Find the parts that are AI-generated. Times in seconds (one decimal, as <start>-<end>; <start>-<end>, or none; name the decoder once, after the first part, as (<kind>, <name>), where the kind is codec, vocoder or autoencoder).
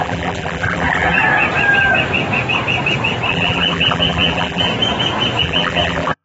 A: 0.0-1.2 (vocoder, BigVGAN v2); 3.3-4.7; 5.4-6.2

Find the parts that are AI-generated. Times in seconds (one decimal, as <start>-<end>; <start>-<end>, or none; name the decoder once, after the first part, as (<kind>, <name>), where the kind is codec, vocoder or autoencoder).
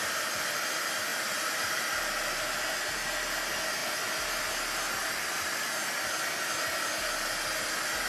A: 5.0-5.7 (vocoder, BigVGAN v2)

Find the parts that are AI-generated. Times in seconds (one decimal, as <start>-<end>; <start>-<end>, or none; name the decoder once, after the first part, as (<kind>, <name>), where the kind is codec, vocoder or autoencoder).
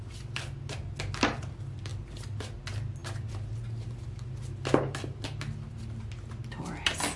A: none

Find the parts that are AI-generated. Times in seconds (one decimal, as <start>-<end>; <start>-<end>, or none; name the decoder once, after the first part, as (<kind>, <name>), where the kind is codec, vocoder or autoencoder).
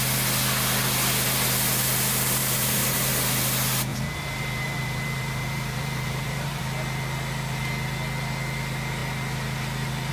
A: 2.4-3.1 (vocoder, BigVGAN v2); 3.9-6.6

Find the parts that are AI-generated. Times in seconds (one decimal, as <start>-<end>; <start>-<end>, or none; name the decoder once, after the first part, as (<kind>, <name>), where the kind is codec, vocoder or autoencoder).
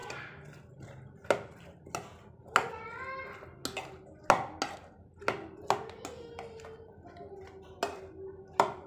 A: none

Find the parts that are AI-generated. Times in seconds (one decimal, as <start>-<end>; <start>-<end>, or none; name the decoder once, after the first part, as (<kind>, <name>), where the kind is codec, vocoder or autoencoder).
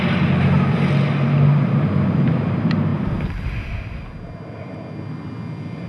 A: none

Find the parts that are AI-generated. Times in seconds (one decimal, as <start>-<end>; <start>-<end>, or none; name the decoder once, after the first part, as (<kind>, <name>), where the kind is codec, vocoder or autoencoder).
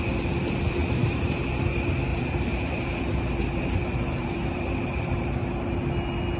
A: 0.8-1.4 (vocoder, BigVGAN v2); 2.1-5.9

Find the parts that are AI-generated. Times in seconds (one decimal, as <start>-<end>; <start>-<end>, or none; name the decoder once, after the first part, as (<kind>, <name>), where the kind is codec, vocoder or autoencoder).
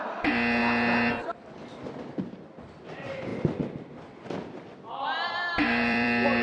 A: 0.0-3.3 (vocoder, BigVGAN v2); 4.0-6.4